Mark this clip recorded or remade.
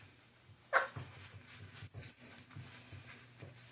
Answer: recorded